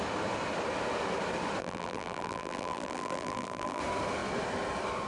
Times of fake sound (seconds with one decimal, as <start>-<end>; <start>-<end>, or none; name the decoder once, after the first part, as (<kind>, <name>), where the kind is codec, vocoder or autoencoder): 1.6-3.8 (vocoder, BigVGAN v2)